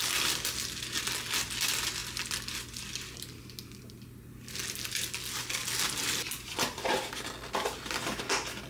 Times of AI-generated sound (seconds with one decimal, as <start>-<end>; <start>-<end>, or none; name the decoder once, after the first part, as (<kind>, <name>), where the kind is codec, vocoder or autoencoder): none